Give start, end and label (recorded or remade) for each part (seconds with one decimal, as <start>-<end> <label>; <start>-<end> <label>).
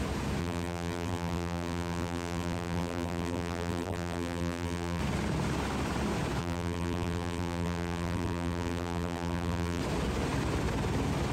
0.0-0.4 recorded; 0.4-5.0 remade; 5.0-6.4 recorded; 6.4-9.8 remade; 9.8-11.3 recorded